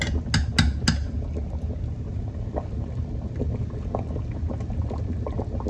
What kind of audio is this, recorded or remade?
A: recorded